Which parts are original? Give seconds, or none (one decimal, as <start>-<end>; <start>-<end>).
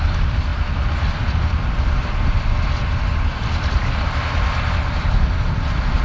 0.0-6.0